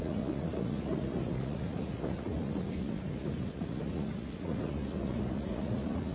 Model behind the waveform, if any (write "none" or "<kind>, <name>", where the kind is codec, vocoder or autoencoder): vocoder, Vocos